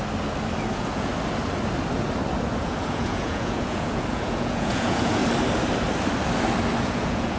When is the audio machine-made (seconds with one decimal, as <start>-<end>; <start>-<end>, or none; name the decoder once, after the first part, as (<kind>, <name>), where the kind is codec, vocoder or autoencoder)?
0.7-1.1 (vocoder, Vocos); 2.5-5.2; 6.8-7.4